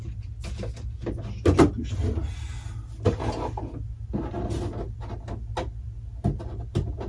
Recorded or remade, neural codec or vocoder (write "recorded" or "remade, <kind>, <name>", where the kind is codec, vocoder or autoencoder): recorded